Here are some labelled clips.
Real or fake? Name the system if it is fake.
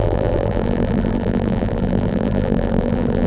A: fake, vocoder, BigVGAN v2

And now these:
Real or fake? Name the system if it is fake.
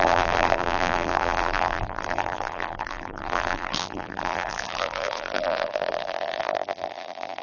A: fake, vocoder, BigVGAN v2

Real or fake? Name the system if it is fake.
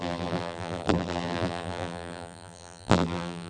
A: fake, vocoder, BigVGAN v2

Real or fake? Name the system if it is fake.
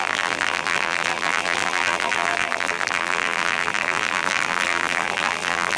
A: fake, vocoder, BigVGAN v2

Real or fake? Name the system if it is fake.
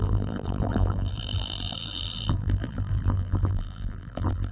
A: fake, vocoder, BigVGAN v2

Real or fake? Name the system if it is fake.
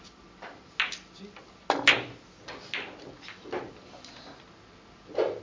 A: real